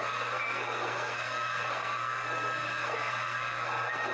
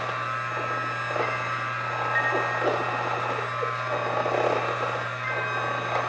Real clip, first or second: second